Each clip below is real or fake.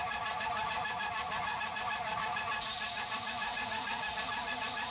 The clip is fake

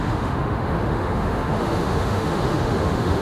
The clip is fake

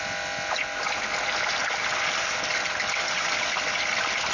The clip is real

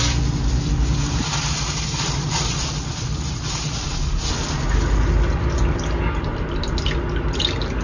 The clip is real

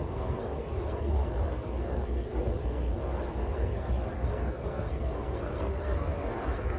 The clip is fake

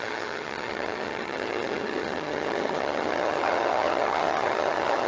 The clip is fake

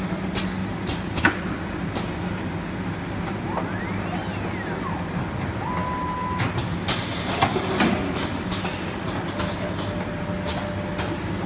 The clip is real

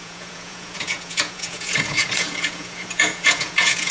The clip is fake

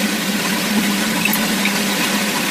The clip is real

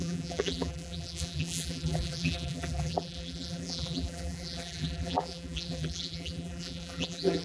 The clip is fake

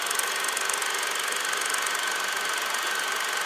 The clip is real